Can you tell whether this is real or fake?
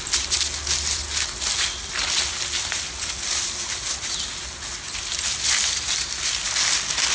real